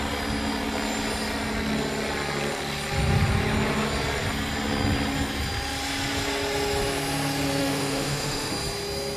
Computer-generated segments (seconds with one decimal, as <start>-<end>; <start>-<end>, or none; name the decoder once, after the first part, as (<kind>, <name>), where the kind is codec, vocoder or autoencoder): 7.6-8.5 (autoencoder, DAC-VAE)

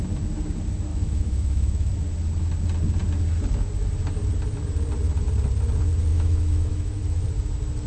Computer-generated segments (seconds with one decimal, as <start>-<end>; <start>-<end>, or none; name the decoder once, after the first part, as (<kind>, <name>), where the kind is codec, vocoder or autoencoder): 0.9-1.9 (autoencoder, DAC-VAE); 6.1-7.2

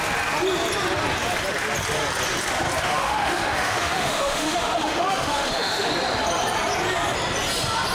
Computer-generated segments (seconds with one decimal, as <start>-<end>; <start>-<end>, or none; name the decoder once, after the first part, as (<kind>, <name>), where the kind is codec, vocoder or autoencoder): 2.9-5.9 (autoencoder, DAC-VAE)

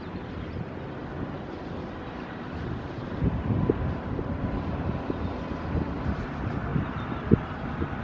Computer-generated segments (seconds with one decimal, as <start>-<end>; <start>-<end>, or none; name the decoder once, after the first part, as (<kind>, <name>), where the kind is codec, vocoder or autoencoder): none

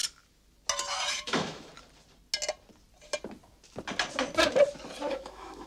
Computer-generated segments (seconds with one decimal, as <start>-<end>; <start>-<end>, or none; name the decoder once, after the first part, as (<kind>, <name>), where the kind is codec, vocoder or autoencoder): 1.1-1.7 (autoencoder, DAC-VAE); 5.1-5.7

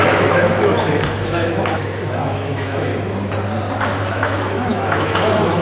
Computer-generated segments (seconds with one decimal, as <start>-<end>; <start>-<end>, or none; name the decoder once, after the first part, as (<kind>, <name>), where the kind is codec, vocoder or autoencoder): 0.0-2.9 (autoencoder, DAC-VAE); 4.1-5.6

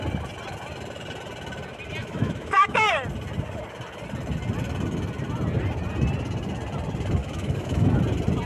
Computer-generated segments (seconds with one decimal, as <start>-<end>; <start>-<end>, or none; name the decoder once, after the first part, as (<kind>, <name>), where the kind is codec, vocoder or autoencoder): 2.0-2.9 (autoencoder, DAC-VAE); 7.2-8.0

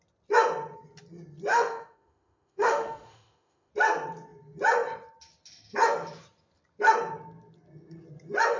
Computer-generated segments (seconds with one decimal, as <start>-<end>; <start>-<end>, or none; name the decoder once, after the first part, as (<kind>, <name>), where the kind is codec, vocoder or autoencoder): 1.5-3.7 (autoencoder, DAC-VAE)